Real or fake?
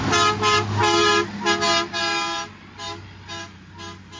real